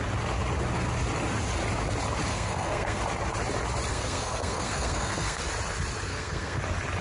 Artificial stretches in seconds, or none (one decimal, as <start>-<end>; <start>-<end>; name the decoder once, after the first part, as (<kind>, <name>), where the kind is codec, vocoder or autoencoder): 2.3-3.0 (codec, SNAC); 3.9-5.4; 6.1-6.6